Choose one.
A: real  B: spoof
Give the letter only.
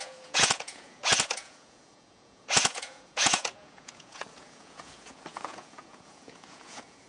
B